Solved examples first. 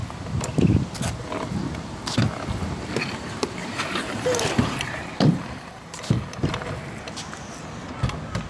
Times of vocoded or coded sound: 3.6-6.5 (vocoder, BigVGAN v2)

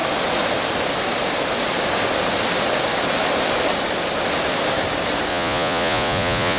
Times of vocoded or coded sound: 5.3-6.6 (vocoder, Vocos)

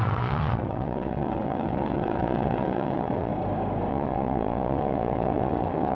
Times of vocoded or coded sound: 0.0-3.3 (vocoder, WaveNeXt); 3.9-5.9

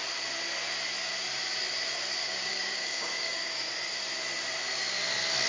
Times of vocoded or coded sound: 2.2-3.7 (codec, DAC)

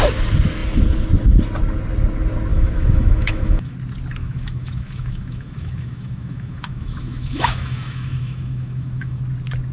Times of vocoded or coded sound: 2.5-3.7 (autoencoder, DAC-VAE); 4.2-9.2

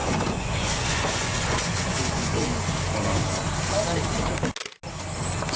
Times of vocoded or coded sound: 0.0-2.7 (vocoder, Vocos)

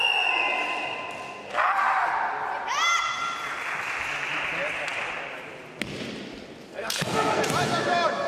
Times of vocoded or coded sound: 6.7-7.4 (codec, SNAC)